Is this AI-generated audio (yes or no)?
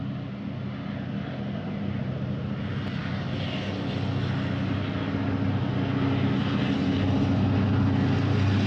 no